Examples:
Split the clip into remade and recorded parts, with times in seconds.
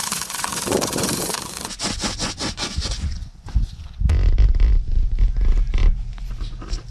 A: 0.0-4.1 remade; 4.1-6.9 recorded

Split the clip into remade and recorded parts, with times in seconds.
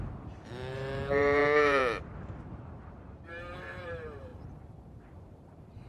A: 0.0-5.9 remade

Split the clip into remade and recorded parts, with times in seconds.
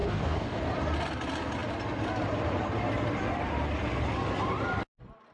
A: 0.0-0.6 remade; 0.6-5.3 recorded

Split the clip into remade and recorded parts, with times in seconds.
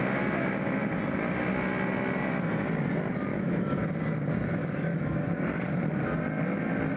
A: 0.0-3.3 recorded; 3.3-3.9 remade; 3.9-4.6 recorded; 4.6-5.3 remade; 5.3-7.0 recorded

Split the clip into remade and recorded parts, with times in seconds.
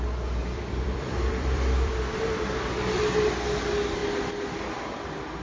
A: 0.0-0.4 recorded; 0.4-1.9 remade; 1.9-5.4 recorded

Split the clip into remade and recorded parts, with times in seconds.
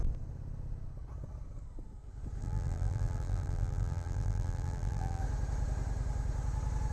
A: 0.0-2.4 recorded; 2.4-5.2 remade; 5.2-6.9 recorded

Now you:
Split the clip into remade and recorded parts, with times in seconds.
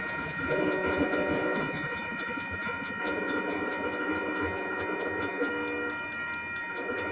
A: 0.0-5.5 remade; 5.5-6.6 recorded; 6.6-7.1 remade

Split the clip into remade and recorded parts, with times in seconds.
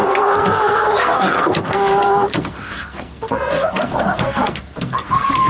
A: 0.0-5.5 remade